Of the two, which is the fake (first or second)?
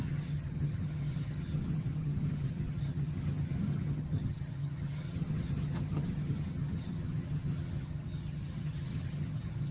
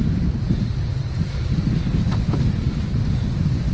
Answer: first